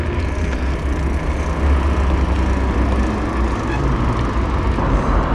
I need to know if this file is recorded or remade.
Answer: recorded